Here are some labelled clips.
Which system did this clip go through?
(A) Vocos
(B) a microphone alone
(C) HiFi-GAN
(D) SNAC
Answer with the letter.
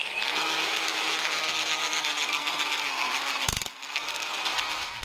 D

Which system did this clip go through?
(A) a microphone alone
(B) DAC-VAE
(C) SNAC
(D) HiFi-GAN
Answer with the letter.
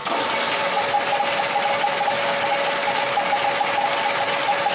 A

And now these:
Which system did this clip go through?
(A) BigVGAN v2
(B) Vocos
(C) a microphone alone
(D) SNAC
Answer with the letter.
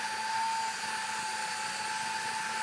C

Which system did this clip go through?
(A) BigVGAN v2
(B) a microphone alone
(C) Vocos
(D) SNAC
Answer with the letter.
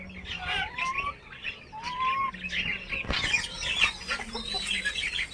B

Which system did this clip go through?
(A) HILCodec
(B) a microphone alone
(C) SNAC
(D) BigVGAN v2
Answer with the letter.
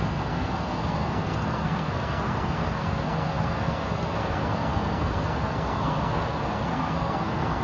C